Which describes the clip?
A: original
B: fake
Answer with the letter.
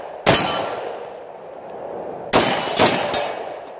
A